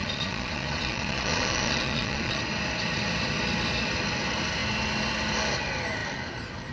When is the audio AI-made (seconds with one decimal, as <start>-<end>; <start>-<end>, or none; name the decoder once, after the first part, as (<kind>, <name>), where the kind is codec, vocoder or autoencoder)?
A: 0.0-2.4 (vocoder, Vocos)